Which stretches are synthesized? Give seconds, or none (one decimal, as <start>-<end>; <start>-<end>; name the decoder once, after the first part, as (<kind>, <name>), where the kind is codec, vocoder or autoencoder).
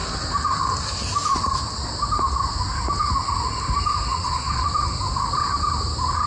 4.1-4.7 (vocoder, Vocos)